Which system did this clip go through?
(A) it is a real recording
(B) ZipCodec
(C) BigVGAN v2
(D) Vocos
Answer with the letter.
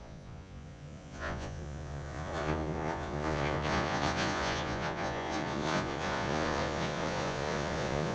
D